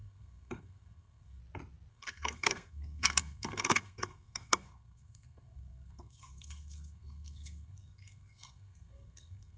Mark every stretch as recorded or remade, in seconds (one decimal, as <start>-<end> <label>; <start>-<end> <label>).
0.0-1.4 remade; 1.4-1.9 recorded; 1.9-9.6 remade